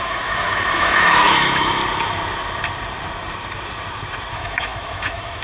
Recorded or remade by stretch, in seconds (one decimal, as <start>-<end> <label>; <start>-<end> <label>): 0.0-1.8 remade; 1.8-4.3 recorded; 4.3-5.4 remade